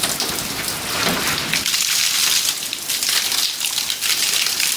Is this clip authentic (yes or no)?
yes